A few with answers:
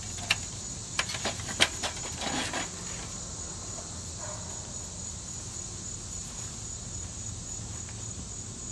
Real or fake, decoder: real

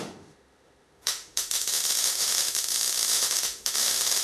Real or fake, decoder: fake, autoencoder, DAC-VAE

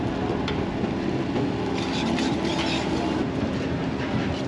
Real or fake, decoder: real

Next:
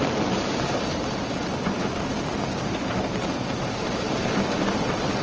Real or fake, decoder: real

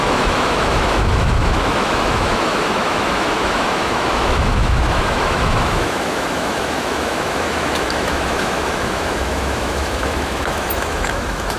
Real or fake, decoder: fake, autoencoder, DAC-VAE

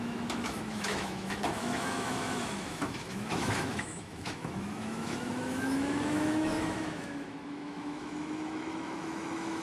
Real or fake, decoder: fake, autoencoder, DAC-VAE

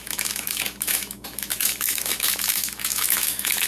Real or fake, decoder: fake, autoencoder, DAC-VAE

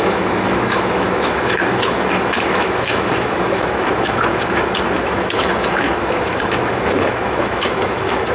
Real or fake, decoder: fake, autoencoder, DAC-VAE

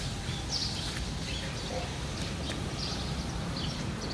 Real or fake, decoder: real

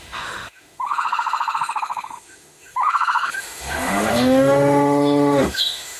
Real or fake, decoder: fake, autoencoder, DAC-VAE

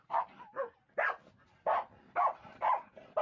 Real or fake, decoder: real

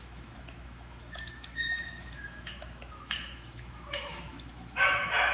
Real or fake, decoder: fake, autoencoder, DAC-VAE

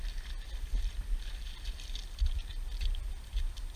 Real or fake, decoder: real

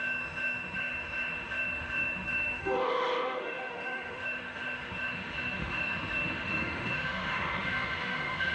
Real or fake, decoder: fake, autoencoder, DAC-VAE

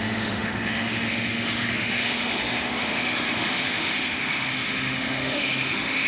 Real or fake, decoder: fake, autoencoder, DAC-VAE